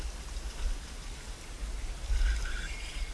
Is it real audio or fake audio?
real